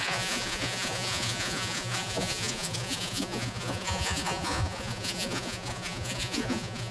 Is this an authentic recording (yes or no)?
no